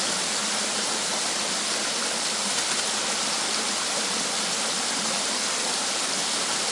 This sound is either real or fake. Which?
real